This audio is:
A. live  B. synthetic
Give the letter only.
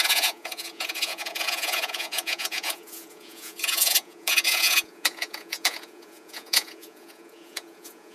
B